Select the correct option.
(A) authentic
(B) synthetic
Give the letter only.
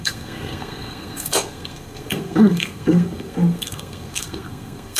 B